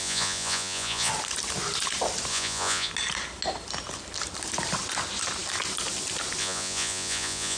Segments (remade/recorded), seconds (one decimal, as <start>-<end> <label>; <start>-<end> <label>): 0.0-1.1 remade; 1.1-2.3 recorded; 2.3-2.9 remade; 2.9-6.4 recorded; 6.4-7.6 remade